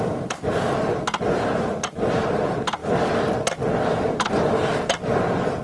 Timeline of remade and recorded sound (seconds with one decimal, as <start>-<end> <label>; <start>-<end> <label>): 0.0-5.6 recorded